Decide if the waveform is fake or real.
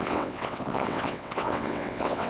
fake